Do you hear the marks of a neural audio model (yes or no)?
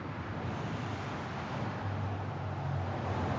no